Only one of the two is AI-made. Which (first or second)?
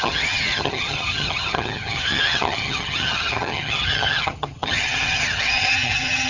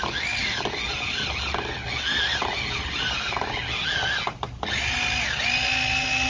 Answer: first